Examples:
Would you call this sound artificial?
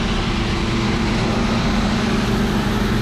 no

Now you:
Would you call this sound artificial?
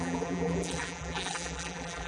yes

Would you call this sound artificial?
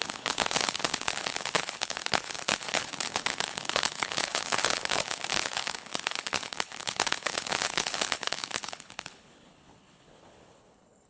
yes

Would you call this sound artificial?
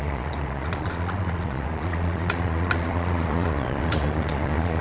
yes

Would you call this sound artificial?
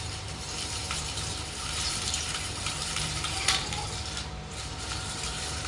yes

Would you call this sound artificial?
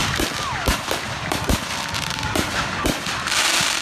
yes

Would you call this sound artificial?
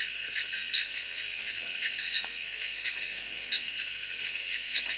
yes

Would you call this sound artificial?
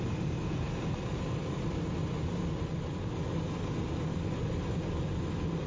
no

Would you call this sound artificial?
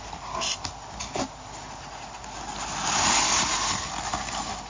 no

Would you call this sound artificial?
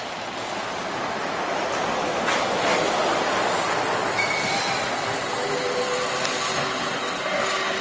no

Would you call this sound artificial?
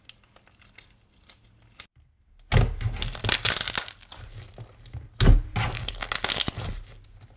no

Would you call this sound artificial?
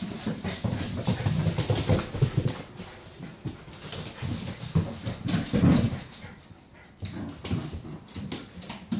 no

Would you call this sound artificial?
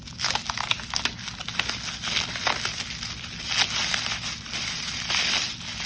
no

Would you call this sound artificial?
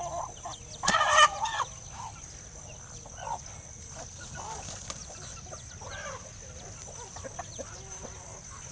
no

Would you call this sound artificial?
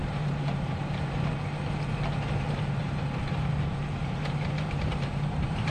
yes